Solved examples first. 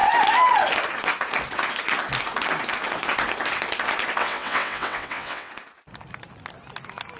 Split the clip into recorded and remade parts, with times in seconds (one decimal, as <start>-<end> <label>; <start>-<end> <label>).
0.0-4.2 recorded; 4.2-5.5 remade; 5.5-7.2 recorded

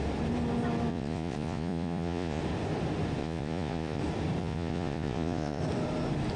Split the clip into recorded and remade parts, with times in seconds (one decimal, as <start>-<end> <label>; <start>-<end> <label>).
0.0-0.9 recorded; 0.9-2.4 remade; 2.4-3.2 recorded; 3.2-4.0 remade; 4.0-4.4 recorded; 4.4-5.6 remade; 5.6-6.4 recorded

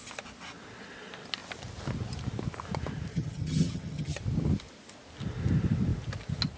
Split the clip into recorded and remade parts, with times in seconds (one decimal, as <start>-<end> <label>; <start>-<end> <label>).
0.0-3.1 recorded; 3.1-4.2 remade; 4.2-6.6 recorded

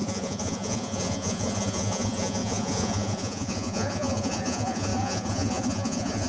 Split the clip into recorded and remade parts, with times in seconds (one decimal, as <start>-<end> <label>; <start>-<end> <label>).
0.0-6.3 remade